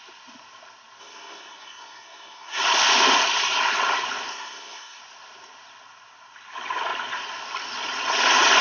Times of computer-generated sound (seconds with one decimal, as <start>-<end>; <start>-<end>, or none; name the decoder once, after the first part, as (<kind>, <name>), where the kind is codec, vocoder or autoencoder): 1.0-2.6 (codec, SNAC); 4.3-5.0